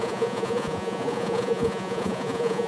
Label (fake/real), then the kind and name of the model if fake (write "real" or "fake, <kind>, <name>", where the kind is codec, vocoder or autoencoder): fake, vocoder, Vocos